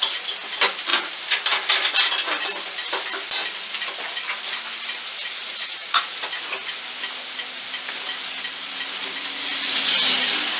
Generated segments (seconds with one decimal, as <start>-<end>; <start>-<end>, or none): 5.4-6.2